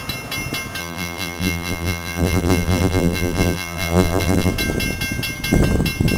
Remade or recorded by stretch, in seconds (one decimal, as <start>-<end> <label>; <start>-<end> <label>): 0.0-0.8 recorded; 0.8-4.5 remade; 4.5-6.2 recorded